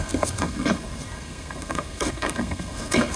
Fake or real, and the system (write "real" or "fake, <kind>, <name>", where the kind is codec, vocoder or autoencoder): fake, codec, SNAC